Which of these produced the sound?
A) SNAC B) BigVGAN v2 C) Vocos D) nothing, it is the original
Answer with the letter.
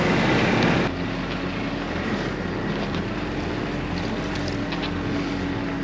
D